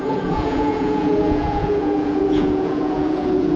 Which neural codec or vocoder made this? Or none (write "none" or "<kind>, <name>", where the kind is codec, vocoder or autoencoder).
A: vocoder, Vocos